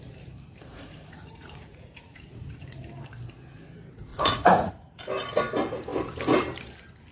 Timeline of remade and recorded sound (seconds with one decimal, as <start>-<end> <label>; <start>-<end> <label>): 0.0-0.7 recorded; 0.7-2.8 remade; 2.8-4.1 recorded; 4.1-4.7 remade; 4.7-7.1 recorded

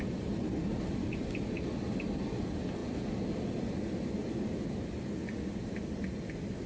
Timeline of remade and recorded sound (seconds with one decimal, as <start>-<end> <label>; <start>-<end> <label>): 0.0-6.7 recorded

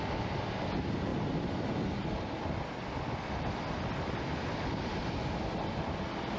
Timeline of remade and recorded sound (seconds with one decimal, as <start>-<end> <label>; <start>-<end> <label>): 0.0-6.4 recorded

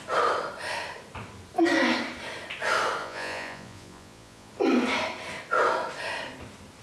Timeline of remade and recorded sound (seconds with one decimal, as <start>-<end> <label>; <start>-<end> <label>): 0.0-3.0 recorded; 3.0-4.5 remade; 4.5-6.8 recorded

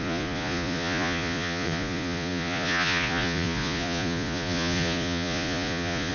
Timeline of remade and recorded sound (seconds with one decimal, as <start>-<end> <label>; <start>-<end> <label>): 0.0-6.1 remade

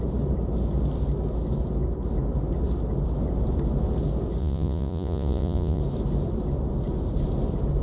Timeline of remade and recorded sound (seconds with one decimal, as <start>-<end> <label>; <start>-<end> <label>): 0.0-4.4 recorded; 4.4-5.8 remade; 5.8-7.8 recorded